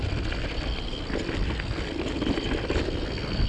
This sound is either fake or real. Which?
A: real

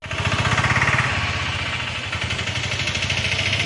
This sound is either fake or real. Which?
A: real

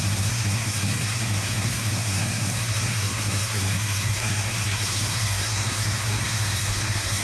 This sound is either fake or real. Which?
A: fake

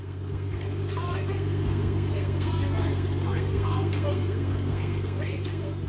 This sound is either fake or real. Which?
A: fake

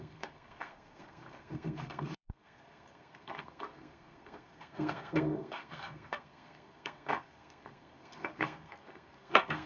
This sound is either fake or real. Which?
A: fake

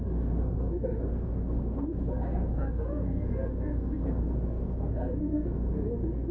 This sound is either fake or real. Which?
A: fake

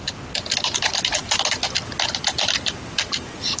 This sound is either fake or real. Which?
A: real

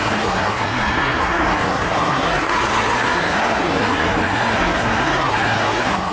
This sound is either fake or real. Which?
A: fake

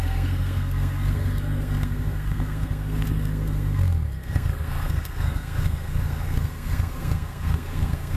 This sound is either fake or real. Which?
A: fake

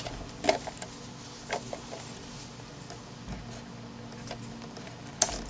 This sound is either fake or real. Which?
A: real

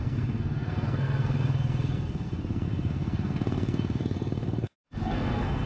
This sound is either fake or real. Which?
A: fake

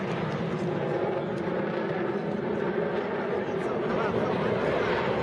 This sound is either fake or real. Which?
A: real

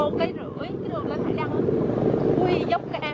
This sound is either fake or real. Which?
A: real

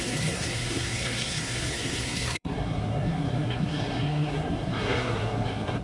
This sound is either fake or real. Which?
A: fake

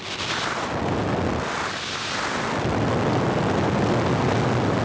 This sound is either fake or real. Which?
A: real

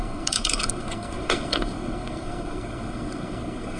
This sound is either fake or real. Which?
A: fake